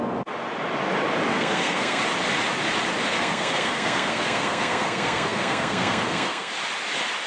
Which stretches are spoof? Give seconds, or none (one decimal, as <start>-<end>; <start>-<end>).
1.3-2.0; 3.1-6.5